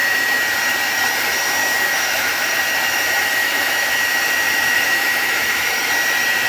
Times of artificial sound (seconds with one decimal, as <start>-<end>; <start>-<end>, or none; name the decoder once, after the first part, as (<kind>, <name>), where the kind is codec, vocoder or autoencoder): 1.6-2.6 (autoencoder, DAC-VAE); 3.4-4.0; 4.6-5.7